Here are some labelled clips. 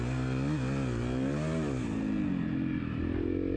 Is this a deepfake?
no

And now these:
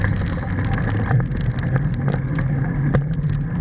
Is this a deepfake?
no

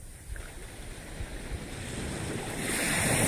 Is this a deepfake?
no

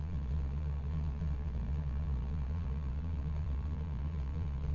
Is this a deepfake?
yes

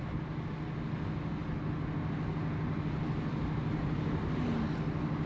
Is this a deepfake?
no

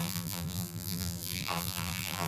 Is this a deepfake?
yes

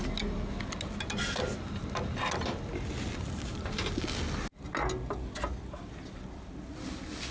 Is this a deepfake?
no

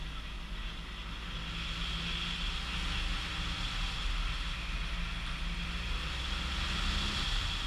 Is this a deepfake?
no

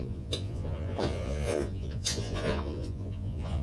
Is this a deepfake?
yes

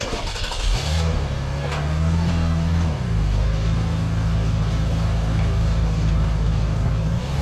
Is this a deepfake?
yes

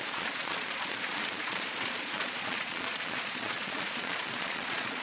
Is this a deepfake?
yes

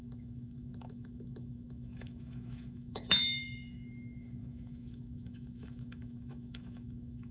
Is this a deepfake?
yes